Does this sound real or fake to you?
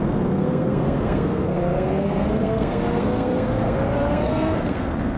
fake